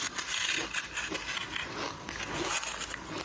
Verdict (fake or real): real